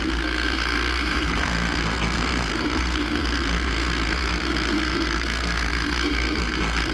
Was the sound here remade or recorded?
remade